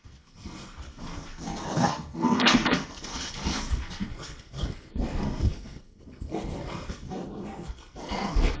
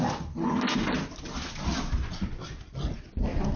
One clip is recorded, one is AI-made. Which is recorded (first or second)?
second